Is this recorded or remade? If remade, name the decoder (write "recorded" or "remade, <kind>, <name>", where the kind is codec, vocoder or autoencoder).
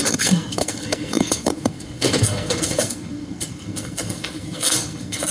remade, codec, SNAC